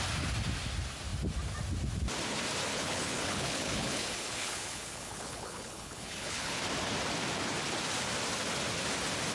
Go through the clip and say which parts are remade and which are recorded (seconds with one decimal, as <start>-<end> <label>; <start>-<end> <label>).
0.0-2.7 recorded; 2.7-6.6 remade; 6.6-9.3 recorded